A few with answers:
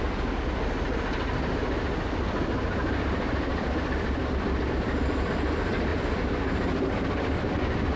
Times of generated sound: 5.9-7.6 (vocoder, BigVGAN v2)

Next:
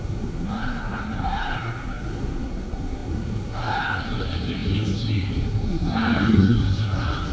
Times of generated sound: 0.0-7.3 (codec, SNAC)

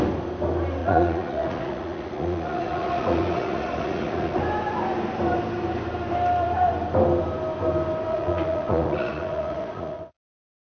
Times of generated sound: 0.8-4.4 (vocoder, Vocos); 8.1-10.2